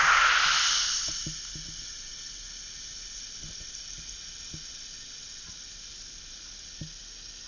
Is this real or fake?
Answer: real